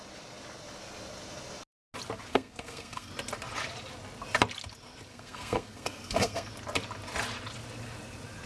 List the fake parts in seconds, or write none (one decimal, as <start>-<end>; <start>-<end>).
2.3-3.1; 5.1-6.5